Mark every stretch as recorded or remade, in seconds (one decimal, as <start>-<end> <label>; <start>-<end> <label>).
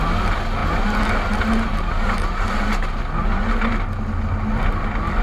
0.0-5.2 recorded